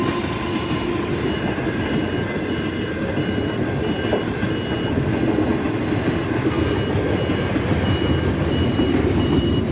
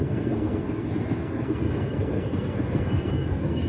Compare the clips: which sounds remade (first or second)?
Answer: second